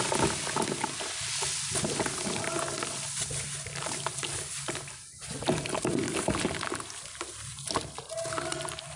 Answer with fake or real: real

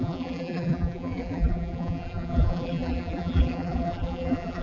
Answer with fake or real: fake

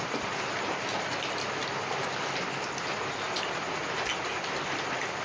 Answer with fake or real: real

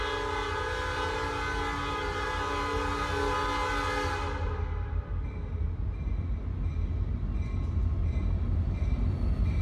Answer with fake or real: real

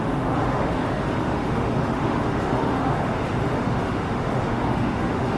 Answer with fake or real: fake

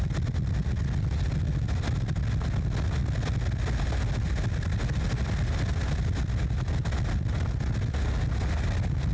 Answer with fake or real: real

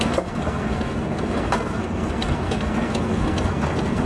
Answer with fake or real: fake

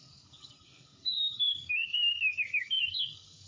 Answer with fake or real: fake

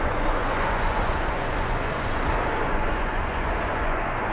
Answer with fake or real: fake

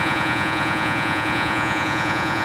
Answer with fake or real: fake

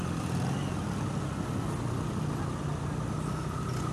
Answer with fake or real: real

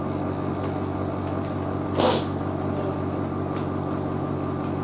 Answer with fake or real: real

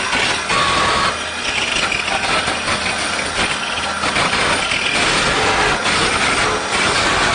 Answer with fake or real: real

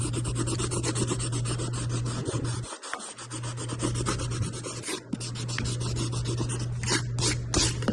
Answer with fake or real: real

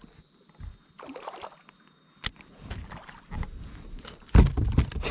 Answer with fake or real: real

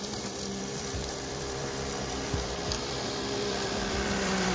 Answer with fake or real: fake